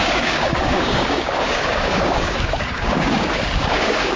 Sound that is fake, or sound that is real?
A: fake